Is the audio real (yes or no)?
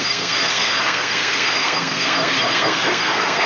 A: no